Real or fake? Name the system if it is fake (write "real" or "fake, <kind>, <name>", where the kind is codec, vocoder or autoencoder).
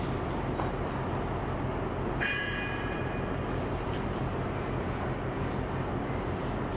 real